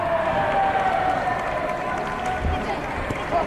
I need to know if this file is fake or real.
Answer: real